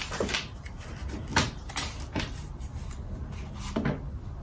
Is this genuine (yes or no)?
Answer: yes